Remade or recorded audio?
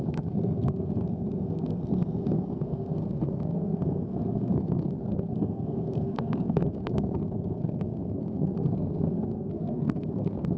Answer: remade